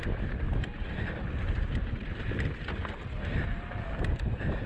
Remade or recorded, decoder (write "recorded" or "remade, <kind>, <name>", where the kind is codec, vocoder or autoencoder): recorded